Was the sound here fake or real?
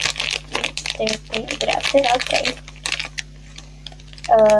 real